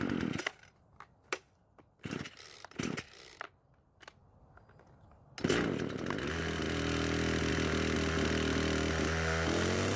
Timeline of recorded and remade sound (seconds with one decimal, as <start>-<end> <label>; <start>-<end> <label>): 0.0-4.2 remade; 4.2-7.5 recorded; 7.5-10.0 remade

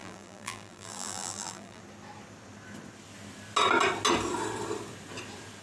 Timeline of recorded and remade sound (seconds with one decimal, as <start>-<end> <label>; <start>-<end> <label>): 0.0-1.8 remade; 1.8-5.6 recorded

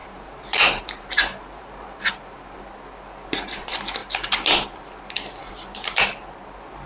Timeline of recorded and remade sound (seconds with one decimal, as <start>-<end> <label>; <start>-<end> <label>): 0.0-2.1 remade; 2.1-6.9 recorded

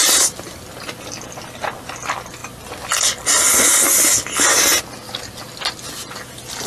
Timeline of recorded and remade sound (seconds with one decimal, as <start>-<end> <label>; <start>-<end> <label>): 0.0-0.7 remade; 0.7-6.7 recorded